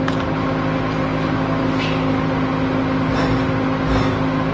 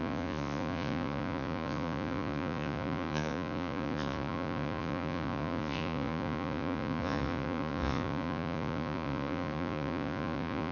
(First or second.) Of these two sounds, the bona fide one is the first